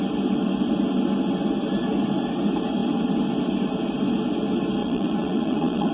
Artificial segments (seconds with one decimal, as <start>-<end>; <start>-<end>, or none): 4.8-5.9